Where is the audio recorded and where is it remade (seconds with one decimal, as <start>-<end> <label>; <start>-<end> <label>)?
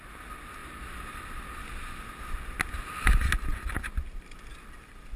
0.0-0.6 recorded; 0.6-1.6 remade; 1.6-5.2 recorded